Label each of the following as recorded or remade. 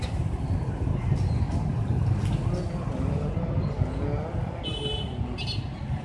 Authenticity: recorded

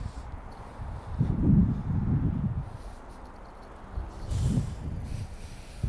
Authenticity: recorded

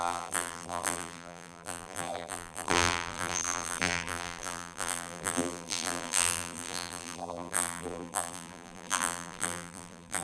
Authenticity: remade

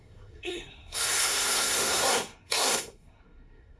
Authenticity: remade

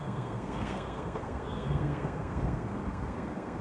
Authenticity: remade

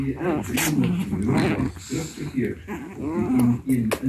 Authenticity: recorded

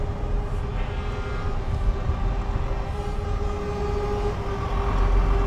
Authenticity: recorded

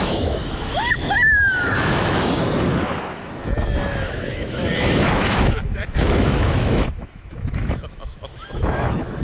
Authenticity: remade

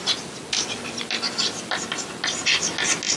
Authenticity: recorded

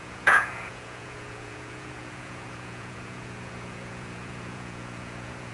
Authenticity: remade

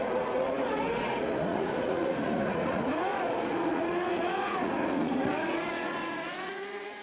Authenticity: remade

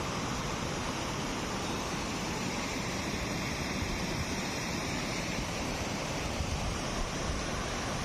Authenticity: remade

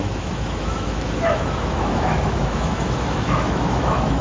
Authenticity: remade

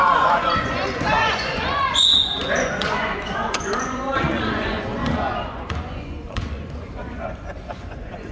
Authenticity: remade